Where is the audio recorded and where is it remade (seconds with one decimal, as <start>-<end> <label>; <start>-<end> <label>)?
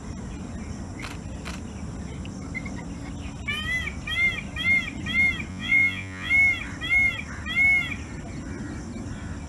0.0-5.5 recorded; 5.5-6.3 remade; 6.3-9.5 recorded